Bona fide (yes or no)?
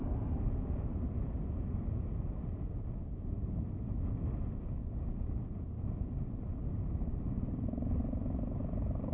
yes